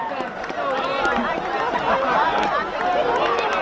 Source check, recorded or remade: recorded